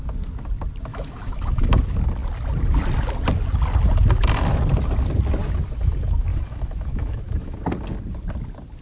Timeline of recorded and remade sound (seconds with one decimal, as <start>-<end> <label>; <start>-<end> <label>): 0.0-0.9 recorded; 0.9-1.8 remade; 1.8-6.3 recorded; 6.3-7.6 remade; 7.6-8.8 recorded